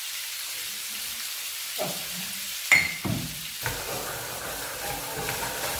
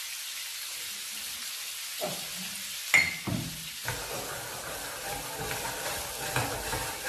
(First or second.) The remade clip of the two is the first